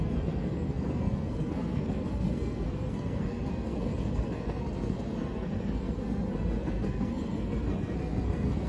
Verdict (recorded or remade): remade